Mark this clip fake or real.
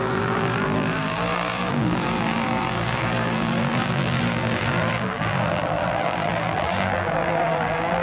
fake